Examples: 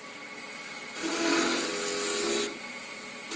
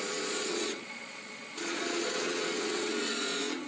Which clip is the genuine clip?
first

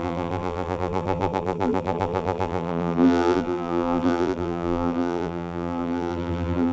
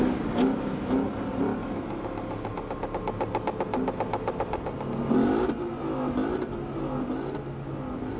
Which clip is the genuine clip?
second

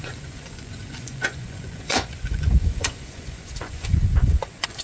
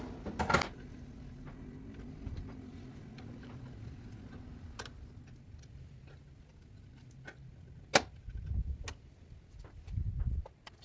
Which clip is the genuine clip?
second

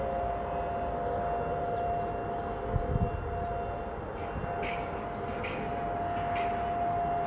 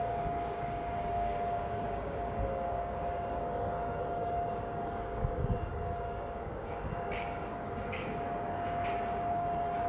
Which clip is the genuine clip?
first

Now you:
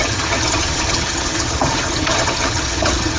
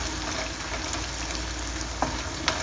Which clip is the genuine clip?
second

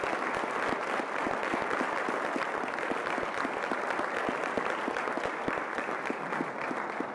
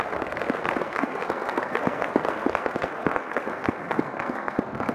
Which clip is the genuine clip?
first